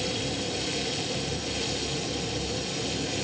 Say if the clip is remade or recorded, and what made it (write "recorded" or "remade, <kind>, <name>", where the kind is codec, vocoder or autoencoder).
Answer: recorded